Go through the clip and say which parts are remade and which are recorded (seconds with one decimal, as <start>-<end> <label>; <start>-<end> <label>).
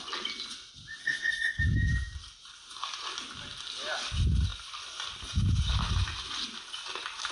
0.0-1.0 recorded; 1.0-1.6 remade; 1.6-7.3 recorded